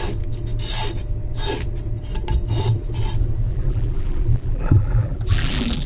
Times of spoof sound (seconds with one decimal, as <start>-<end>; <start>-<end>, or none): 3.5-5.9